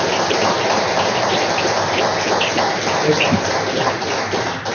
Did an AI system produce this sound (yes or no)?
no